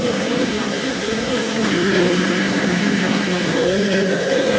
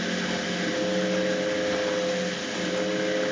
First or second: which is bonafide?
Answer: second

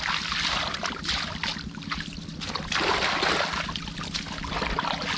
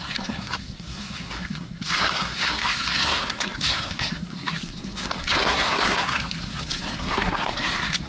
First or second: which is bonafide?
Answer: first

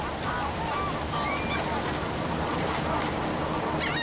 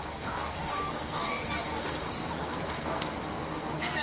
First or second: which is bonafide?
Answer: first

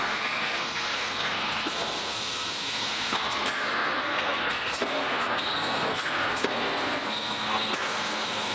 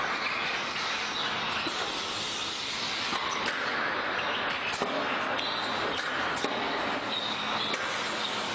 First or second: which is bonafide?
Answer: second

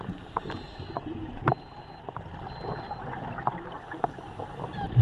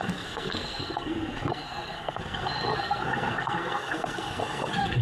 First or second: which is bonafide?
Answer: first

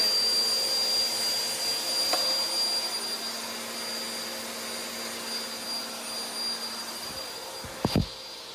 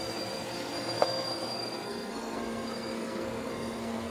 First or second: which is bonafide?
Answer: first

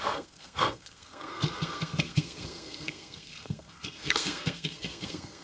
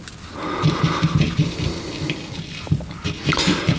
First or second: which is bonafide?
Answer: second